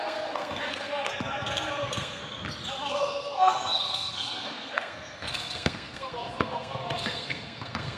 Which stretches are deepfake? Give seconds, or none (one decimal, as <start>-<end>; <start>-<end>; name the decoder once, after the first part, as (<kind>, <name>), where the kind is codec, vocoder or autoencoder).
0.0-2.2 (codec, SNAC); 2.7-8.0

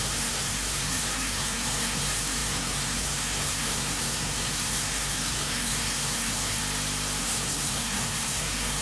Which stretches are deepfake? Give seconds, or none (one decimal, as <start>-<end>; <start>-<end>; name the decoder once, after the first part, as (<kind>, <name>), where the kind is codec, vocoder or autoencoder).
0.0-6.6 (codec, SNAC); 7.2-8.8

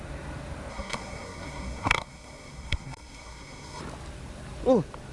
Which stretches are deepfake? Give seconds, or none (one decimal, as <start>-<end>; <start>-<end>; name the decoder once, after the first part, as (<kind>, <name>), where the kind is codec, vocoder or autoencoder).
0.7-3.8 (codec, SNAC)

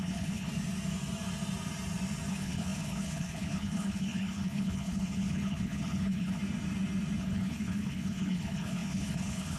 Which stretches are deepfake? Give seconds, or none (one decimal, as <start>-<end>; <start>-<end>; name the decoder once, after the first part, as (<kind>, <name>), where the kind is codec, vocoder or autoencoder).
0.0-0.5 (codec, HILCodec); 2.3-6.4; 7.2-9.6

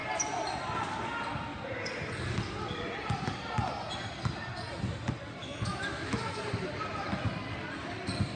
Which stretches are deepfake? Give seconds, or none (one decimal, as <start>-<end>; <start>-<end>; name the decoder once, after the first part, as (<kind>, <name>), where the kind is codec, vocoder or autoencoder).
5.4-6.2 (autoencoder, DAC-VAE)

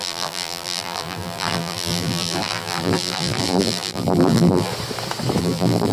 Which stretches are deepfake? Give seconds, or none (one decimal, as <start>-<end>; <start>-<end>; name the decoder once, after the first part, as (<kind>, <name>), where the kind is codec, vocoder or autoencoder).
0.0-4.7 (vocoder, BigVGAN v2); 5.4-5.9